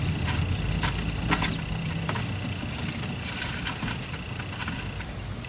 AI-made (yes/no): no